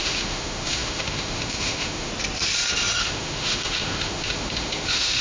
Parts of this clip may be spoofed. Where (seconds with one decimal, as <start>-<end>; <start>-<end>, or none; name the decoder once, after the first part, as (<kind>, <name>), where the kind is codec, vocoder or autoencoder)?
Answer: 0.0-2.1 (autoencoder, DAC-VAE); 3.0-5.2